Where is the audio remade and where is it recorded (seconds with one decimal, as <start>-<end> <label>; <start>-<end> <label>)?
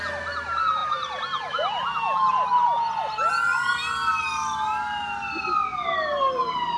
0.0-5.7 recorded; 5.7-6.8 remade